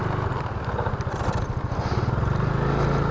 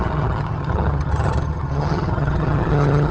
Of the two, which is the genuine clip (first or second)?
first